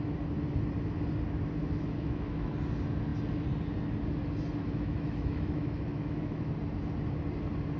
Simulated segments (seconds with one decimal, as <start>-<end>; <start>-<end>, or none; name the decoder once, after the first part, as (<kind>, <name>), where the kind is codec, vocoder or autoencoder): 1.6-2.5 (autoencoder, DAC-VAE); 4.6-6.5

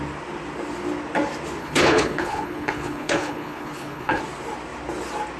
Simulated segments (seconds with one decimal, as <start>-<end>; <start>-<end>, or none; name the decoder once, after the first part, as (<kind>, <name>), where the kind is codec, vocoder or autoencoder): 1.6-4.2 (codec, HILCodec)